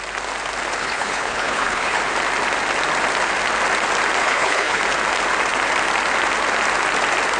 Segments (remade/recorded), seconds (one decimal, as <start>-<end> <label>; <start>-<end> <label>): 0.0-0.8 recorded; 0.8-2.0 remade; 2.0-4.2 recorded; 4.2-4.8 remade; 4.8-7.4 recorded